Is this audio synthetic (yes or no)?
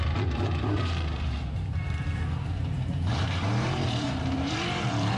yes